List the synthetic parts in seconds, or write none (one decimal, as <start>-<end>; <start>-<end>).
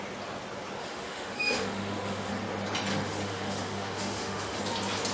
0.8-2.3; 2.9-4.6